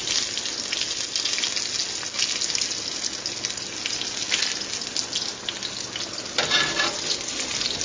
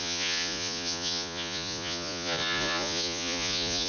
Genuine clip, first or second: first